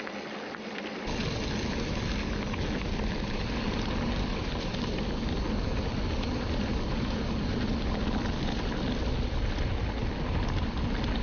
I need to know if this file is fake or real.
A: real